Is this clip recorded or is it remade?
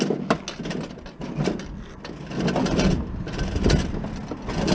recorded